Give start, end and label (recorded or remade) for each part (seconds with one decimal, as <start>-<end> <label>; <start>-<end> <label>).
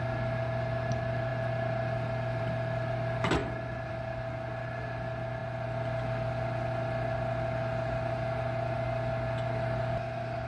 0.0-10.5 recorded